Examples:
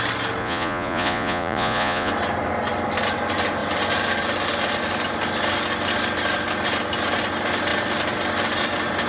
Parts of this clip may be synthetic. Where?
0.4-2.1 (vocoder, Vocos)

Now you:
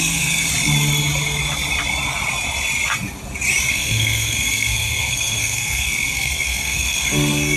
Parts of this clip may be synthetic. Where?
0.0-0.5 (codec, SNAC); 3.7-7.6

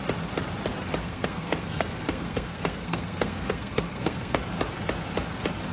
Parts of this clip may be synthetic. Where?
1.0-4.4 (codec, SNAC)

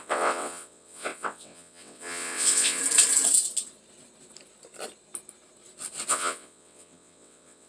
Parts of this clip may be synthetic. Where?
0.0-2.8 (vocoder, WaveNeXt); 6.1-7.7

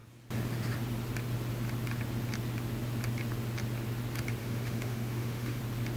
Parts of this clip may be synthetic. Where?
4.4-5.6 (autoencoder, DAC-VAE)

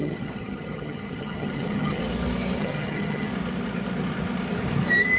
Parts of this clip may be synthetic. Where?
0.0-2.0 (vocoder, HiFi-GAN); 2.6-3.3